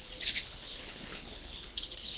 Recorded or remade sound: remade